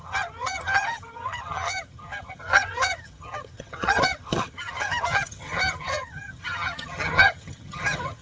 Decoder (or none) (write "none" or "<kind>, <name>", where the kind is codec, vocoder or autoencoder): vocoder, HiFi-GAN